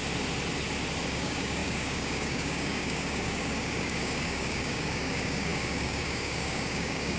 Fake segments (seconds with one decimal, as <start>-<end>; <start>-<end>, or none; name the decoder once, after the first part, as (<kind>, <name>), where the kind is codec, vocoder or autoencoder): 1.1-7.2 (codec, DAC)